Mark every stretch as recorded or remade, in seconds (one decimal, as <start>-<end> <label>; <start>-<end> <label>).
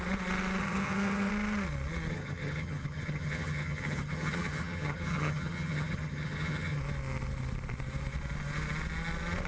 0.0-0.6 recorded; 0.6-1.3 remade; 1.3-2.1 recorded; 2.1-6.8 remade; 6.8-9.5 recorded